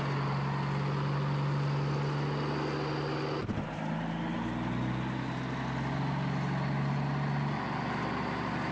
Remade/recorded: recorded